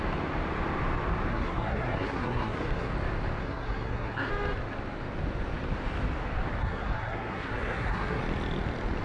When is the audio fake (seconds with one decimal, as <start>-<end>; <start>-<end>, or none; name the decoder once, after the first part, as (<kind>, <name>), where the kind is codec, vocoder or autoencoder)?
1.3-2.9 (codec, SNAC); 3.4-4.3; 6.6-8.2